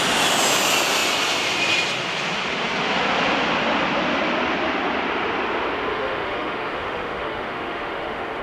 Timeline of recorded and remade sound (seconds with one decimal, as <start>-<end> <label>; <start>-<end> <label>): 0.0-5.9 recorded; 5.9-8.4 remade